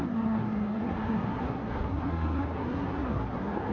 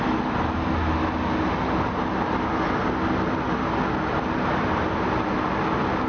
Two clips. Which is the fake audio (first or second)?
first